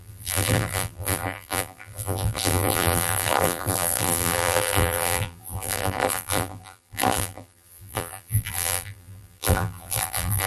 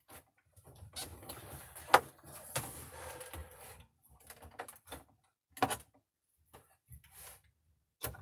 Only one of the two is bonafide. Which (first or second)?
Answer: second